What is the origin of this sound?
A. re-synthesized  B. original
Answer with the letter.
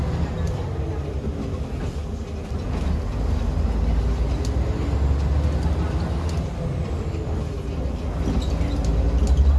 B